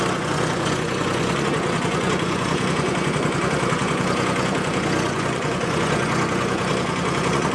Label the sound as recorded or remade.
remade